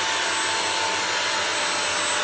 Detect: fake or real real